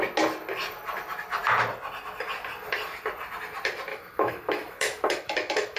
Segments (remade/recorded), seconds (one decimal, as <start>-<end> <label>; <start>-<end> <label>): 0.0-3.9 recorded; 3.9-5.8 remade